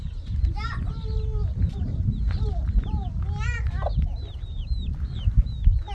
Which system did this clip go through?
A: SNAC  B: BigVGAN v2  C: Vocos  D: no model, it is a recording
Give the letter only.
D